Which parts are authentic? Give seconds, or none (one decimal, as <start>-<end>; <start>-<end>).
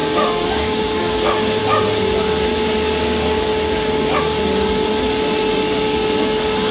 1.6-3.0; 3.5-5.5